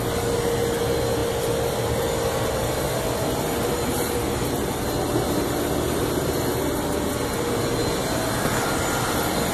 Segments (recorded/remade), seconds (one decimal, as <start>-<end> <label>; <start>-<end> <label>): 0.0-9.5 recorded